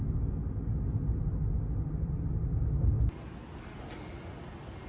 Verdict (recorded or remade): recorded